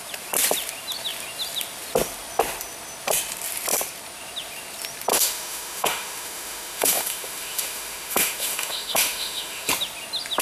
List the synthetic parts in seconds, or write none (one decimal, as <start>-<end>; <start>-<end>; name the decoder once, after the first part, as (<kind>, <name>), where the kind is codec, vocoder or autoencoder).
5.1-9.7 (autoencoder, DAC-VAE)